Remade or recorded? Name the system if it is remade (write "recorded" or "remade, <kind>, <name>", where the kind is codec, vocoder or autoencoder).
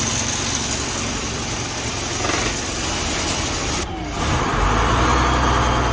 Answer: recorded